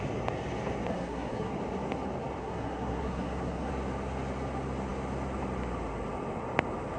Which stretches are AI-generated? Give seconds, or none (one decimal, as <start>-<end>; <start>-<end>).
0.9-1.5; 2.4-3.7